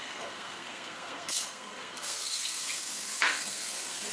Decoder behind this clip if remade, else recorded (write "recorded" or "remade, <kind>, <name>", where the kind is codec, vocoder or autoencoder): remade, codec, SNAC